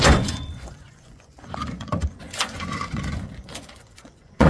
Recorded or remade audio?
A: remade